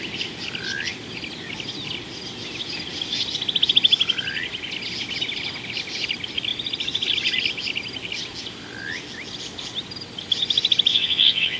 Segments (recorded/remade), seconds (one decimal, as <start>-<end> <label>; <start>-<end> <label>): 0.0-10.9 recorded; 10.9-11.6 remade